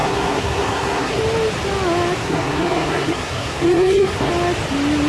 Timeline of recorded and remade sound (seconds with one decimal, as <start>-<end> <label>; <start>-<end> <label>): 0.0-1.2 remade; 1.2-2.2 recorded; 2.2-4.3 remade; 4.3-5.1 recorded